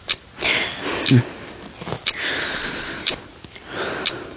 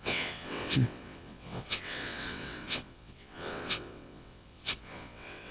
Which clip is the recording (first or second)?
first